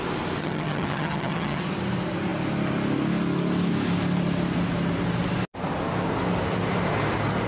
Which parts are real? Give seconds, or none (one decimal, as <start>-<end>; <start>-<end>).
0.0-0.4; 1.6-7.5